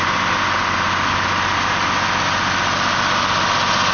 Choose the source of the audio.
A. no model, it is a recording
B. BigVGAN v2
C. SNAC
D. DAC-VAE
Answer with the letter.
A